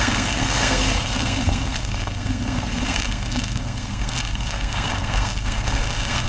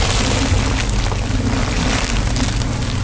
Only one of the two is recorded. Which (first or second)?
second